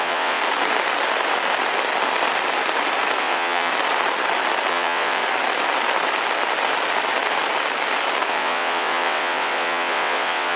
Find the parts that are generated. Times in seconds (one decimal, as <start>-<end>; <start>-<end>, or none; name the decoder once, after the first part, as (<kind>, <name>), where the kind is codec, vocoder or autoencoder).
0.0-0.4 (vocoder, WaveNeXt); 3.2-3.7; 4.7-5.2; 8.3-10.6